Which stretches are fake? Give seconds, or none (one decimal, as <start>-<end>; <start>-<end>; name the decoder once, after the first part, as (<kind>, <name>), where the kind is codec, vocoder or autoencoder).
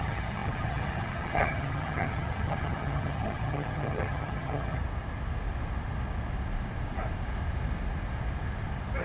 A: 0.0-4.8 (vocoder, HiFi-GAN)